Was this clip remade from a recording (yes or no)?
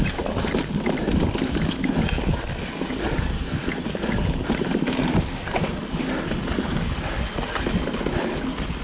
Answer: no